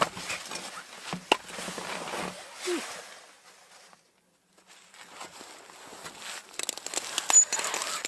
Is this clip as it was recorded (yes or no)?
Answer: yes